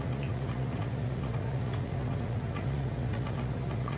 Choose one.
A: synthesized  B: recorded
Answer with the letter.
A